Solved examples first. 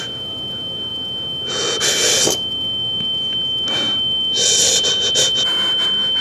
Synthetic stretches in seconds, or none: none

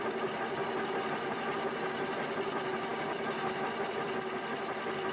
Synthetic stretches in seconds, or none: none

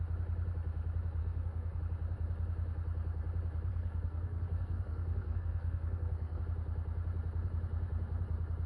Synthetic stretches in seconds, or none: 1.2-1.8 (codec, SNAC); 3.7-6.4

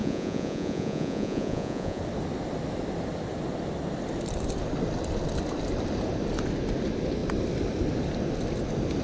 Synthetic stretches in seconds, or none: 0.0-2.0 (vocoder, Vocos)